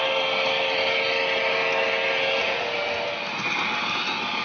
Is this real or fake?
real